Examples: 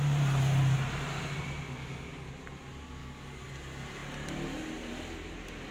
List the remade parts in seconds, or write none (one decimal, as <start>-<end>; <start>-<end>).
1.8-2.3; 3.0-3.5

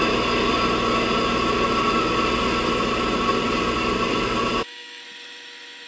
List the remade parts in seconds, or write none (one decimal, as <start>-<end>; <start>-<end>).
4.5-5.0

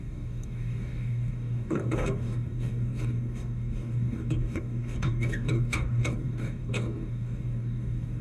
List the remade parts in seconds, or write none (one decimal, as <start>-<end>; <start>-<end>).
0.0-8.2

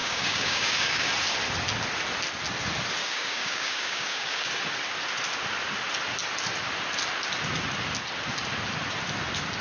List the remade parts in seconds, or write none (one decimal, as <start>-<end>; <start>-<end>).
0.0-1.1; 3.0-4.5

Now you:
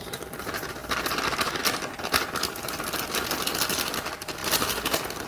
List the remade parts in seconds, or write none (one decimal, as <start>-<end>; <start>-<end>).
none